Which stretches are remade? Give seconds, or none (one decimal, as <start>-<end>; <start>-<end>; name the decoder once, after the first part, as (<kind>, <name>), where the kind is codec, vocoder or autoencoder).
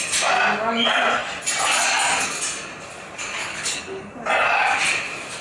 3.5-4.1 (codec, HILCodec)